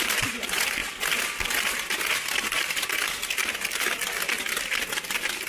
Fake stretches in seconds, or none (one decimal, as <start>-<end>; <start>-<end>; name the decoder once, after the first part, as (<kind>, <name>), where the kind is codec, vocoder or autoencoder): none

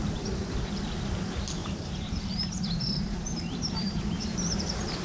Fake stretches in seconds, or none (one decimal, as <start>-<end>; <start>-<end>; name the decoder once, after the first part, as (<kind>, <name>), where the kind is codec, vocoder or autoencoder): 1.6-4.6 (vocoder, BigVGAN v2)

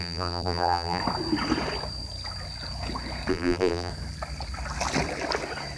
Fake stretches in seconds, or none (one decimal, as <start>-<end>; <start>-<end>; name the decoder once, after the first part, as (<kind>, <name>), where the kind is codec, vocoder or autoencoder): 0.0-1.0 (vocoder, BigVGAN v2); 3.3-3.9

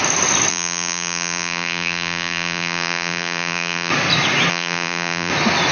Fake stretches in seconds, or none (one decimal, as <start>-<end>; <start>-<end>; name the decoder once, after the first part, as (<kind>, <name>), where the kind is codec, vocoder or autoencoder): 0.5-3.9 (vocoder, BigVGAN v2); 4.5-5.3

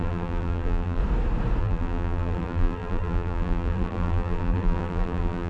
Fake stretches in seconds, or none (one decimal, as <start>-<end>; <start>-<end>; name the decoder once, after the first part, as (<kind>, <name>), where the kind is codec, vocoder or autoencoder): 0.0-1.0 (vocoder, BigVGAN v2); 1.6-5.5

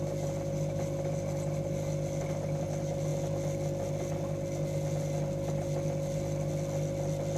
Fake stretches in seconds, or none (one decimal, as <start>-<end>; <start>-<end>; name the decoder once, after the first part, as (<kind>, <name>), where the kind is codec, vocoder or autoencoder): none

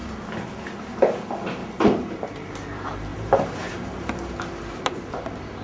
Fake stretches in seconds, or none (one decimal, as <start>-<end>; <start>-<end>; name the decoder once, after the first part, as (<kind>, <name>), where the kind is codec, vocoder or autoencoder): 1.6-2.5 (vocoder, BigVGAN v2); 3.1-4.3

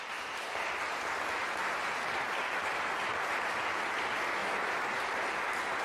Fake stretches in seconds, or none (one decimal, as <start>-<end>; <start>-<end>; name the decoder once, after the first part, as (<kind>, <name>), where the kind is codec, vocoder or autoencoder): 4.4-5.1 (vocoder, BigVGAN v2)